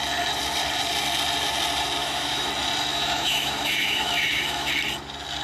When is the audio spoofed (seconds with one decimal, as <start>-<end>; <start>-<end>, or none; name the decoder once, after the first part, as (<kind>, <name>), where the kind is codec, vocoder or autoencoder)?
2.0-2.5 (autoencoder, DAC-VAE); 2.9-4.7